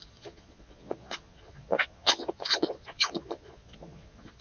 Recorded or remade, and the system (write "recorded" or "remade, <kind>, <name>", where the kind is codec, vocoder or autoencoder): remade, vocoder, Vocos